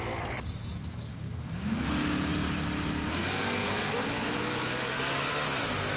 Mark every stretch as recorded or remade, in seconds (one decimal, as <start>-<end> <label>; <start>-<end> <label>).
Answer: 0.0-1.1 recorded; 1.1-1.9 remade; 1.9-6.0 recorded